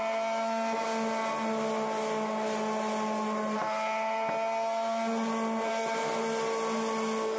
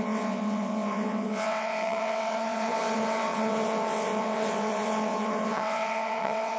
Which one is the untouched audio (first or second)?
first